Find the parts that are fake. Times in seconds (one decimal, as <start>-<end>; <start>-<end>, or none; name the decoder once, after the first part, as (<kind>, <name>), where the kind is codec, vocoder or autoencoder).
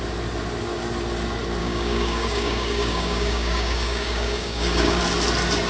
1.6-5.0 (codec, DAC)